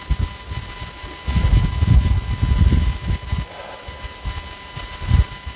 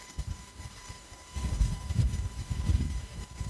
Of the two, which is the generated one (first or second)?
second